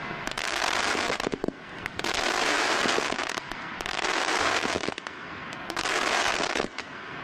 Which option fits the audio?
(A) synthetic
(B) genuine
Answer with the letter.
A